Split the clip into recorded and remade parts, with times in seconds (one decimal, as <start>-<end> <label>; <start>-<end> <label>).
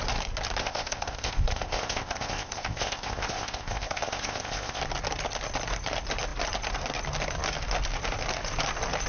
0.0-0.6 recorded; 0.6-4.8 remade; 4.8-9.1 recorded